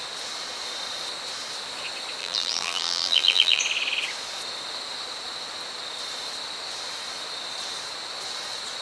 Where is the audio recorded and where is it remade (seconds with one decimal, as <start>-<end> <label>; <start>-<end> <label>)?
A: 0.0-2.2 recorded; 2.2-3.6 remade; 3.6-8.8 recorded